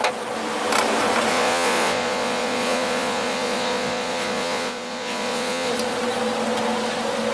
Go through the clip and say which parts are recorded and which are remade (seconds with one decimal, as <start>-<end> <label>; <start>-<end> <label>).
0.0-1.3 recorded; 1.3-5.7 remade; 5.7-7.3 recorded